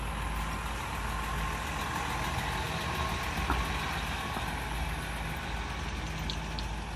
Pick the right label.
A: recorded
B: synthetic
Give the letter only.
A